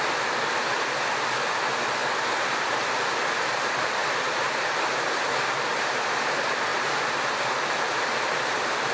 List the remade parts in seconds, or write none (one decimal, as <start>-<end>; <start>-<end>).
2.0-2.5; 4.0-4.9

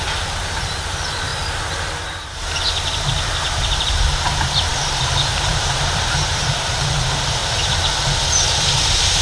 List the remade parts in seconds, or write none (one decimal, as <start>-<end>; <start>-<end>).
0.0-1.3; 2.0-7.4; 8.4-9.2

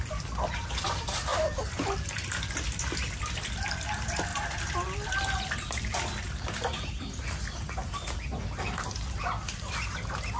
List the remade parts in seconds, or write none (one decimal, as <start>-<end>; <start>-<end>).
1.3-3.7; 4.3-6.4